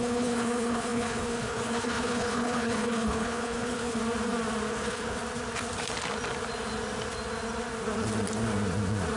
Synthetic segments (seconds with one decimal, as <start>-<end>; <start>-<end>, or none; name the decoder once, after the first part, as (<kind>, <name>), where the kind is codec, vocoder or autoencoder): 0.0-4.0 (codec, HILCodec); 4.7-5.2